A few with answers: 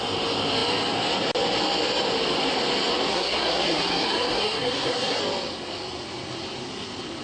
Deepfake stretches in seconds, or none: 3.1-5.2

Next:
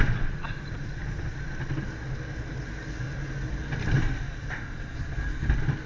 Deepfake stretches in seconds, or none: none

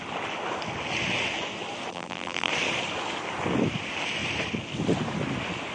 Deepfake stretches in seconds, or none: 1.9-2.5

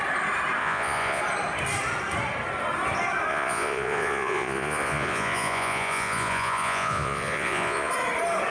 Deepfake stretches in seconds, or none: 0.6-1.2; 3.3-7.9

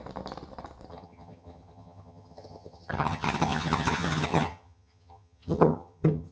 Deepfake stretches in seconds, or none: 0.9-6.3

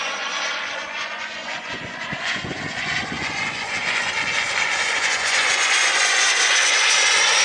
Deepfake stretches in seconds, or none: 0.0-7.4

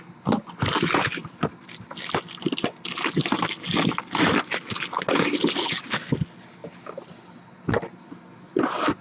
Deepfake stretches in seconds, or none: none

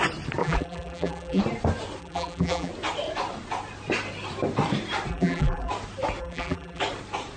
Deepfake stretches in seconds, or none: 0.4-1.4; 2.0-2.7; 5.1-5.7; 6.2-6.8